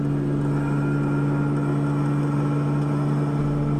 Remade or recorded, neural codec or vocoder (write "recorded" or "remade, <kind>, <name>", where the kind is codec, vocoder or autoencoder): recorded